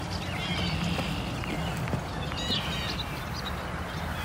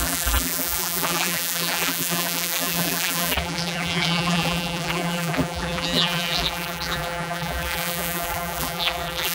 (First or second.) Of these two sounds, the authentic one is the first